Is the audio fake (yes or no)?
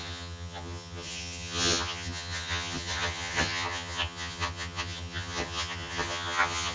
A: yes